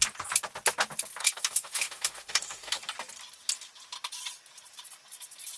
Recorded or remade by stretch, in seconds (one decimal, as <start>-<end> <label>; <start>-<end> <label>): 0.0-1.2 recorded; 1.2-2.8 remade; 2.8-5.6 recorded